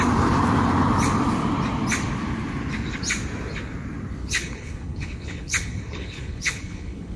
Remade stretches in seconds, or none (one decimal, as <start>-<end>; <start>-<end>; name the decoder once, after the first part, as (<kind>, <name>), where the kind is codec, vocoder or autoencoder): 4.2-7.2 (codec, HILCodec)